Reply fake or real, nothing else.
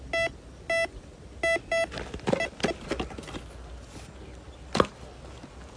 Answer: real